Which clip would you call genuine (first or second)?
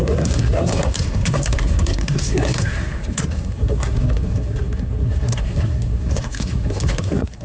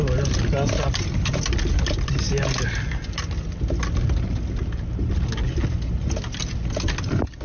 second